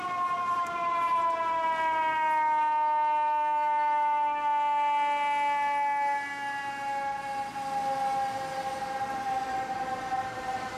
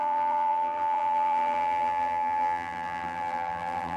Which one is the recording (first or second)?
first